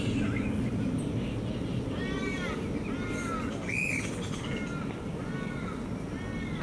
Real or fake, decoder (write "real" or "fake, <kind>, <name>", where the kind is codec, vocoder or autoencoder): real